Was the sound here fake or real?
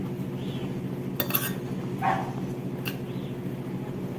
real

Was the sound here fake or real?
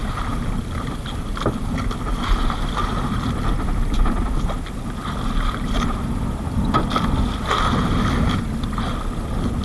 real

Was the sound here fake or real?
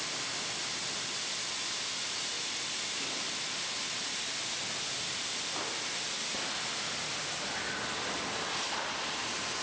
real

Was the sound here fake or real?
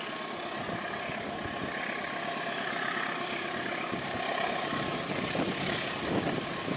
real